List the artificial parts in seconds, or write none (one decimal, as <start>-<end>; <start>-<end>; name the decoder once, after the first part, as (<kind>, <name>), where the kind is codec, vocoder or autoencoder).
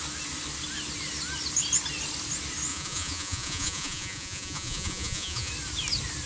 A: 2.7-5.5 (vocoder, Vocos)